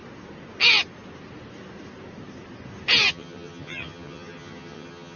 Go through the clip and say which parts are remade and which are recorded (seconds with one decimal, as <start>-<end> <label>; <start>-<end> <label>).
0.0-3.1 recorded; 3.1-5.2 remade